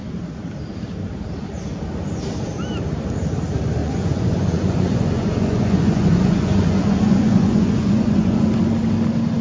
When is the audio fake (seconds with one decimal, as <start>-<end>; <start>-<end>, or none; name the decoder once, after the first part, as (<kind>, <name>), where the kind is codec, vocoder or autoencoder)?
3.8-8.5 (vocoder, Vocos)